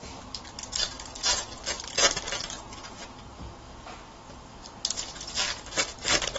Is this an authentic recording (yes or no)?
yes